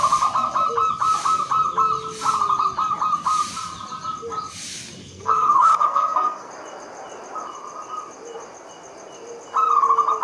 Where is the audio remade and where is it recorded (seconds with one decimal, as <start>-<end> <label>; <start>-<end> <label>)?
0.0-5.0 recorded; 5.0-6.5 remade; 6.5-10.2 recorded